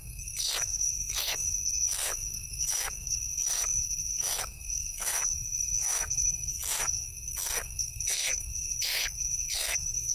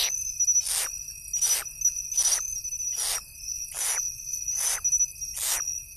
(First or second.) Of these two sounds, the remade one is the first